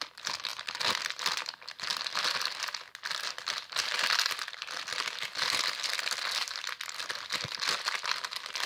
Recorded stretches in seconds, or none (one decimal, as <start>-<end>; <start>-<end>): 0.0-8.7